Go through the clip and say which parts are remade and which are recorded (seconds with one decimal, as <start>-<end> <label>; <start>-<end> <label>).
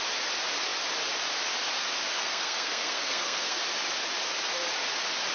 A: 0.0-2.2 recorded; 2.2-3.6 remade; 3.6-5.3 recorded